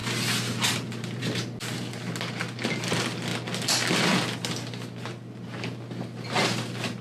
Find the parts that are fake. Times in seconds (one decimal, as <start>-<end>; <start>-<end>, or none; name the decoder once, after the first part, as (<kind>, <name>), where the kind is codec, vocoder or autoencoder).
none